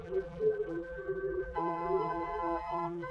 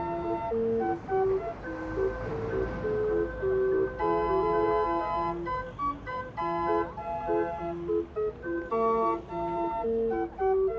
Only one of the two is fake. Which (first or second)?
first